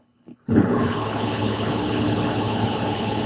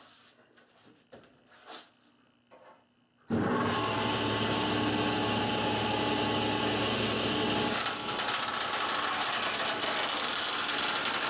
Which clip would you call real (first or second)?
second